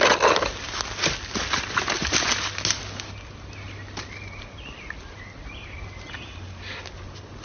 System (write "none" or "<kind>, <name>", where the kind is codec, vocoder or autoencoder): none